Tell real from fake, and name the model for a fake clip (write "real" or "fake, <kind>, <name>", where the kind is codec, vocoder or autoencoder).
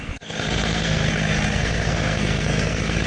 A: fake, codec, SNAC